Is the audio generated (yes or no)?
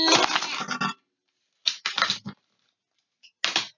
no